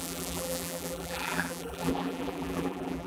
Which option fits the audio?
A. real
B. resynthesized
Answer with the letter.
B